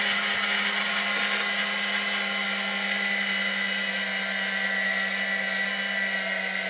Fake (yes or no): no